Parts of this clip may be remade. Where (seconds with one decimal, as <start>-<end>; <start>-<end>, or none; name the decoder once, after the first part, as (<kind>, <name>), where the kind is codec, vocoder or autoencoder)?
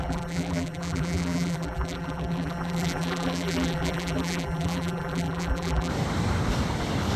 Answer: 0.0-5.9 (vocoder, BigVGAN v2)